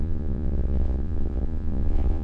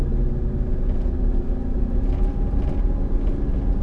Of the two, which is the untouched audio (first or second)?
second